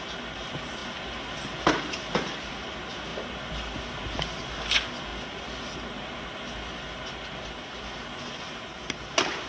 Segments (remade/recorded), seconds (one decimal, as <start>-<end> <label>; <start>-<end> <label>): 0.0-9.5 recorded

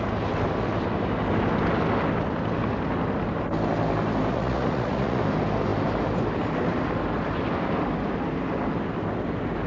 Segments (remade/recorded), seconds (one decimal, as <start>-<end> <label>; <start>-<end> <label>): 0.0-4.3 recorded; 4.3-5.2 remade; 5.2-9.7 recorded